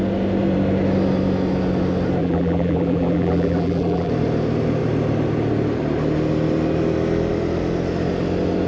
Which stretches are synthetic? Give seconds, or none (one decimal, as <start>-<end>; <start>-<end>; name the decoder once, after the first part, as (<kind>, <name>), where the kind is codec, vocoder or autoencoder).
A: 2.2-4.1 (vocoder, BigVGAN v2)